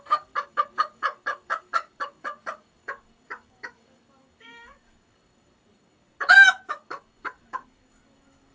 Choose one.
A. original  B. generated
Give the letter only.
B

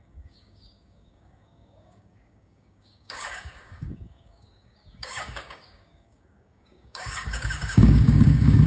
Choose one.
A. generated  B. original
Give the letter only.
A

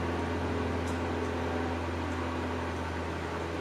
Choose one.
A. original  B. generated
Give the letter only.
A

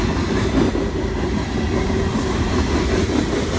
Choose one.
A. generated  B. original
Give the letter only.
B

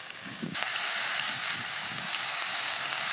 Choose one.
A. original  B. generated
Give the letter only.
B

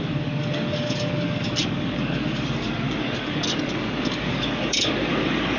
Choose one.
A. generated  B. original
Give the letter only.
A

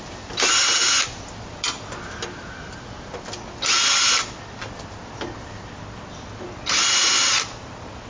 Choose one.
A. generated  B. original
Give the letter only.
B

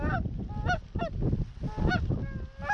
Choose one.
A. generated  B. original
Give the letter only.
B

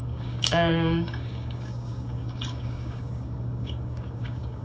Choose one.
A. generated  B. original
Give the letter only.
A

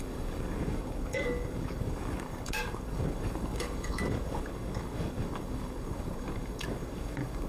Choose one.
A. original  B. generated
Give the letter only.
B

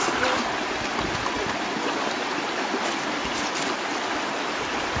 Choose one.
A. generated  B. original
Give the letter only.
B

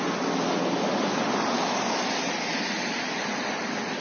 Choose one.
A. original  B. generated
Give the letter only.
A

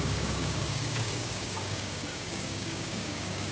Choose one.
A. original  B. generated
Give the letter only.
B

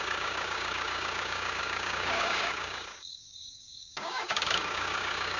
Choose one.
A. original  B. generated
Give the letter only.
B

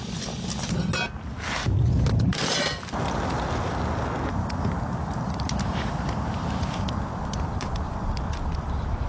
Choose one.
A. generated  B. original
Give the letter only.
B